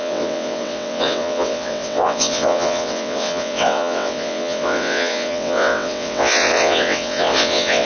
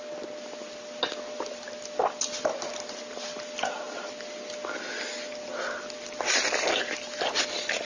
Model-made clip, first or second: first